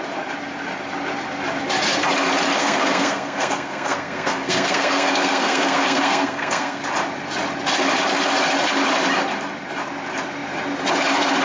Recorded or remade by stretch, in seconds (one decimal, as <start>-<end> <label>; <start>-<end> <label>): 0.0-2.6 recorded; 2.6-6.8 remade; 6.8-11.4 recorded